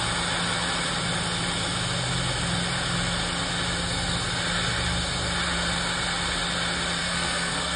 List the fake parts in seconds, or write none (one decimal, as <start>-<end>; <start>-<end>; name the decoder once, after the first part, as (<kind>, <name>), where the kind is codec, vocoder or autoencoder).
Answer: 7.0-7.8 (codec, SNAC)

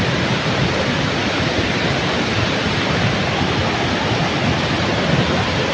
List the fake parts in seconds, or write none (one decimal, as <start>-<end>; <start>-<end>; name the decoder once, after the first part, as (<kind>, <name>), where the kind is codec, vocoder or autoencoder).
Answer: 0.0-3.6 (vocoder, BigVGAN v2)

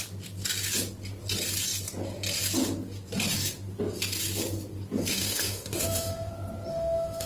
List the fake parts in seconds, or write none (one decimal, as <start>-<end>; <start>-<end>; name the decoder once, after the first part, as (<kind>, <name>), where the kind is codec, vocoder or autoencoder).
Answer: 5.1-6.3 (autoencoder, DAC-VAE); 6.7-7.3